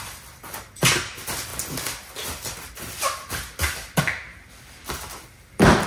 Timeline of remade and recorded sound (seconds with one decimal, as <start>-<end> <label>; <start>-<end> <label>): 0.0-5.9 recorded